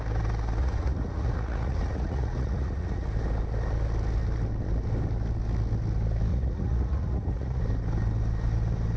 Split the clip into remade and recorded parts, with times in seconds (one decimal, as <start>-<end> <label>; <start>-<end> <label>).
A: 0.0-0.6 recorded; 0.6-3.1 remade; 3.1-6.3 recorded; 6.3-7.6 remade; 7.6-9.0 recorded